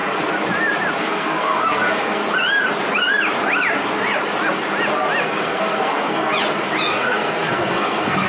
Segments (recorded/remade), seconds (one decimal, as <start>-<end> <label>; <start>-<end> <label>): 0.0-1.0 recorded; 1.0-2.2 remade; 2.2-5.2 recorded; 5.2-6.3 remade; 6.3-6.9 recorded; 6.9-8.3 remade